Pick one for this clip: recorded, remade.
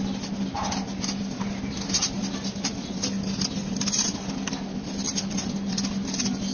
recorded